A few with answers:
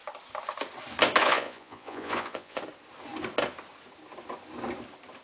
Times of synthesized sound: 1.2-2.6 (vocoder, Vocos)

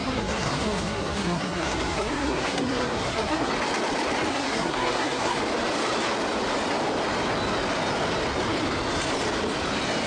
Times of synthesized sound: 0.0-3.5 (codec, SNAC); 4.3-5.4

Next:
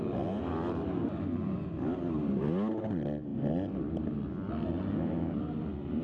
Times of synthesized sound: none

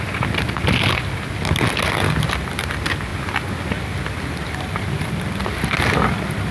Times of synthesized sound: none

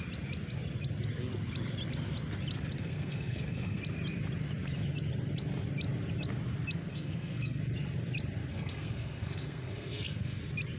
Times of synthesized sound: 2.8-3.8 (codec, SNAC); 6.9-7.6; 8.5-10.4

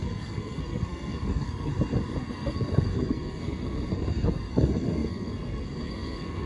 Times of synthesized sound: 0.0-1.7 (codec, SNAC); 2.2-6.5

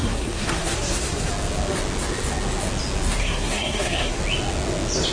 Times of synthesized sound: 0.0-1.3 (codec, SNAC); 3.2-4.2

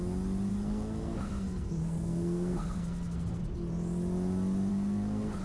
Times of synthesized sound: 0.5-3.4 (codec, SNAC); 4.7-5.4